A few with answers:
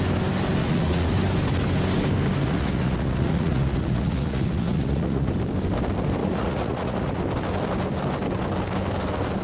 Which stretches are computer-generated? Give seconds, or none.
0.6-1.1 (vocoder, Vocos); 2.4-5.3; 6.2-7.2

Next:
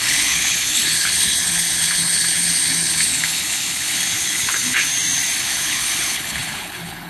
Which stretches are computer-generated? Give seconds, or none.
0.0-4.9 (codec, HILCodec); 5.4-7.1

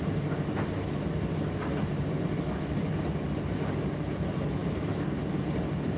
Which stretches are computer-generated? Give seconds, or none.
none

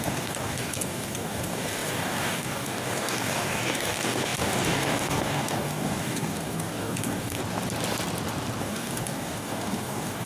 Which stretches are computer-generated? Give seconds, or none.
0.0-7.4 (codec, DAC); 8.6-10.3

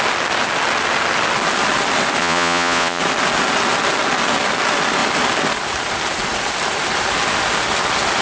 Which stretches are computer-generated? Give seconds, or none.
2.2-3.0 (vocoder, Vocos)

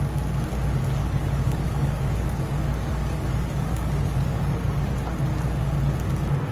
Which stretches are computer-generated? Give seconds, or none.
1.0-4.9 (codec, DAC)

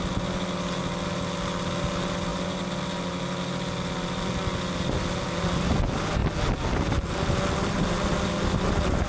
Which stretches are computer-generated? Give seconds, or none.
none